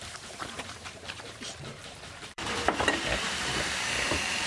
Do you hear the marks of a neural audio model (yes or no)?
yes